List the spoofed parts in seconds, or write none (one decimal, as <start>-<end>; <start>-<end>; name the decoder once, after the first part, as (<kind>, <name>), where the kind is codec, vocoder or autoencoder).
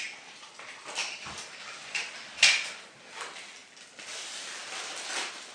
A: none